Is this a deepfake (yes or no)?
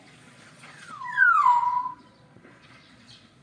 yes